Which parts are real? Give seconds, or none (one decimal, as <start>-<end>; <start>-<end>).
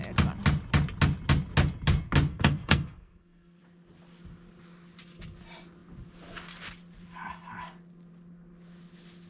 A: 0.0-2.3; 3.6-9.3